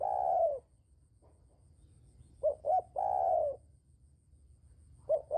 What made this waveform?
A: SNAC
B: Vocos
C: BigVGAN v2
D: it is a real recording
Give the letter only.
D